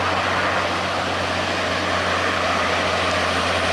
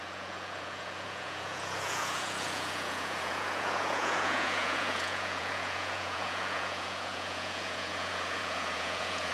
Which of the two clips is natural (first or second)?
first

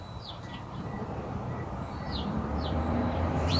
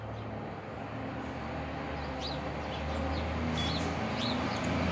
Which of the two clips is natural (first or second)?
second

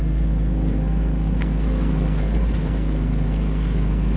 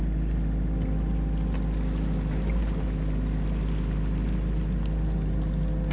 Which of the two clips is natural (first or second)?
second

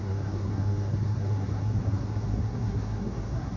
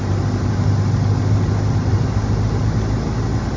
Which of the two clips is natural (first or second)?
second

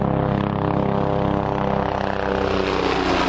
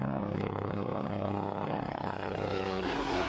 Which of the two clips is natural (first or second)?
first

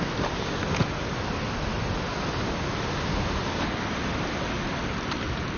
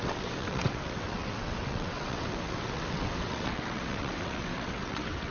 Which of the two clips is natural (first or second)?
first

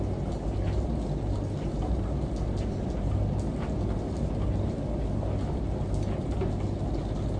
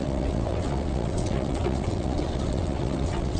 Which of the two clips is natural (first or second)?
first